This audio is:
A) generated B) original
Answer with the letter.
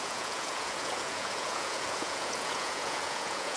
A